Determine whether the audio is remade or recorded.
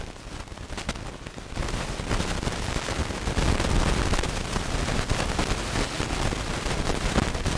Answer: recorded